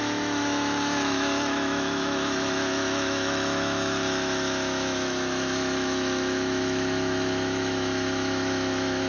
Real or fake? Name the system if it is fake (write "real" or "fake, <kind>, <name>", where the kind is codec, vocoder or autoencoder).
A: fake, autoencoder, DAC-VAE